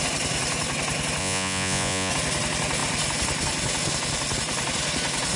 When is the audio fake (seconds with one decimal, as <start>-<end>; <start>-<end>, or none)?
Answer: 1.2-2.1